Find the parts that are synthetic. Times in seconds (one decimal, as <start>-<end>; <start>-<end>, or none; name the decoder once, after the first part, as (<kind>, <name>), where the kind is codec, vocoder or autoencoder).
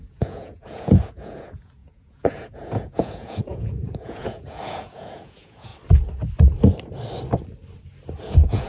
0.0-5.7 (vocoder, Vocos); 8.2-8.7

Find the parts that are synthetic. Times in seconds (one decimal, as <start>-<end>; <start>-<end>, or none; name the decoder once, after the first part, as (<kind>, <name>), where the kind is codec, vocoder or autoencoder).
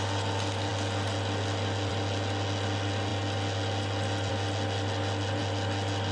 none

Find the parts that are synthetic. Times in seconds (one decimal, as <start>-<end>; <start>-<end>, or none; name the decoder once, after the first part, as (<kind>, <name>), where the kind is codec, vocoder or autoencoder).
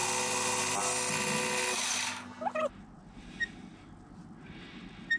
none